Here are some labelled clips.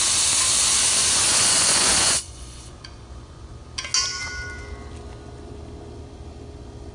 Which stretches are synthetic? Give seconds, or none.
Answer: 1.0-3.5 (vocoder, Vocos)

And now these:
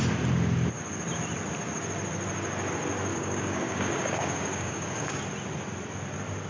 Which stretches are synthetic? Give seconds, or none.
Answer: 3.1-5.2 (codec, DAC)